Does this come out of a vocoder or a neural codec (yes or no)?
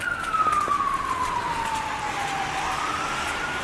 no